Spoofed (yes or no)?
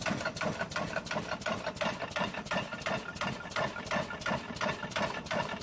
yes